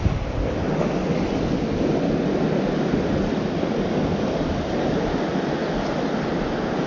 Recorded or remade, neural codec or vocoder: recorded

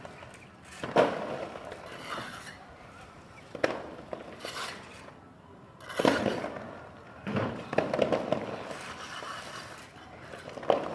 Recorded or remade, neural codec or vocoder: recorded